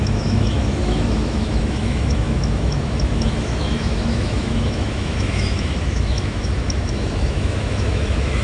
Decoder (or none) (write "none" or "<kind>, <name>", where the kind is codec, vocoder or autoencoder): autoencoder, DAC-VAE